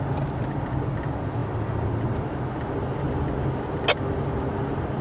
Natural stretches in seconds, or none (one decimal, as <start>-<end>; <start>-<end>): 0.0-5.0